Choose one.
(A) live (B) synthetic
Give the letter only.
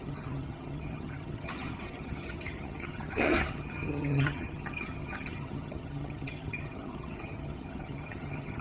B